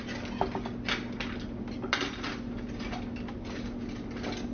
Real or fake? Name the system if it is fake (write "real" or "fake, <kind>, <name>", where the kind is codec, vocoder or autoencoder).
real